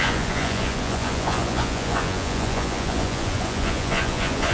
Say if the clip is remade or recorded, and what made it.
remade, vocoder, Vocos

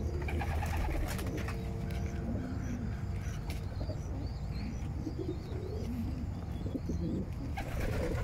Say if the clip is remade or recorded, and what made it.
recorded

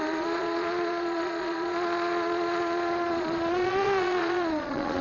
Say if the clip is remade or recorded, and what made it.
remade, vocoder, Vocos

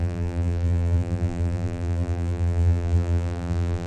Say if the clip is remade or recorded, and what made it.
remade, vocoder, BigVGAN v2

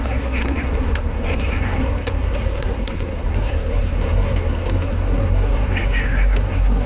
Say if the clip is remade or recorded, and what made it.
remade, codec, SNAC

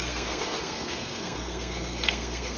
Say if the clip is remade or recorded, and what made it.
remade, codec, SNAC